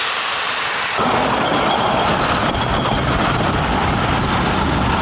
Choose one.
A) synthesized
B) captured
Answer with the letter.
B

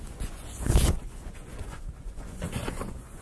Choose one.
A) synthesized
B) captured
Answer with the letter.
A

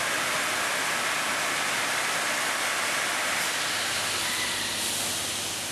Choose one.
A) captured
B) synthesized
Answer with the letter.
A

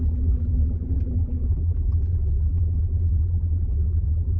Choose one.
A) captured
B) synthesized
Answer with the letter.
B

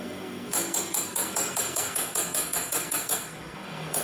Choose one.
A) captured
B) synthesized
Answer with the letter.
B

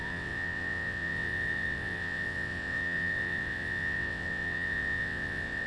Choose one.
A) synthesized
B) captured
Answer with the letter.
A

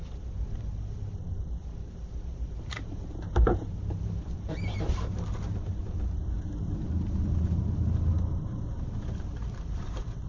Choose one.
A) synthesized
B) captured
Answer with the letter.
A